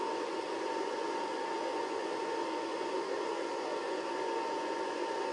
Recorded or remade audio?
remade